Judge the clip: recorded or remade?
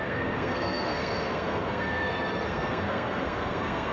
remade